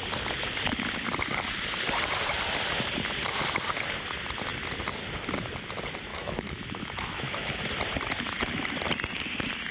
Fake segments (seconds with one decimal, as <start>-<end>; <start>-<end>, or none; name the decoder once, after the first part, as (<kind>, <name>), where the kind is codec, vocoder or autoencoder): 6.1-7.6 (autoencoder, DAC-VAE)